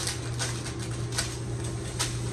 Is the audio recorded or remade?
recorded